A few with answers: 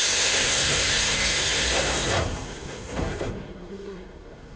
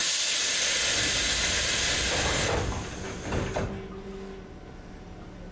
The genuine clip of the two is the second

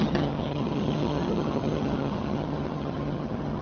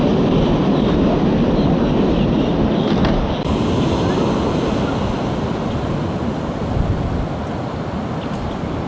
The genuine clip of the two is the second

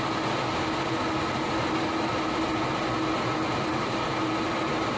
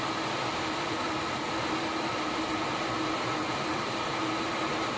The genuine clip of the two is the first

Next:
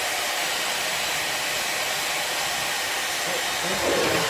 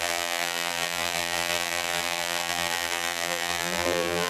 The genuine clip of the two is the first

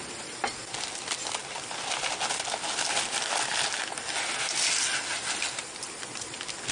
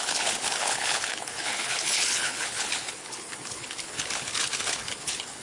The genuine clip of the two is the first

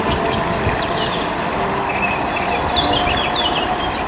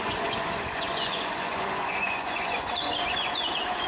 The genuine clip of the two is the first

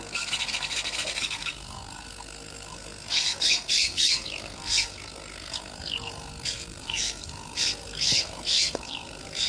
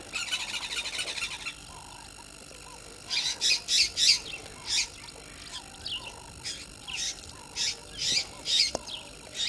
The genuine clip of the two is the second